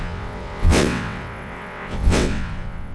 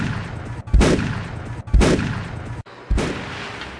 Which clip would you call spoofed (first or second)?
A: first